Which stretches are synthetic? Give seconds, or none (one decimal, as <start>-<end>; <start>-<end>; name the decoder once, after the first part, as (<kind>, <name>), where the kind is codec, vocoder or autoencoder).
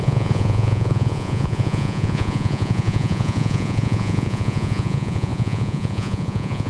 0.0-6.7 (vocoder, Vocos)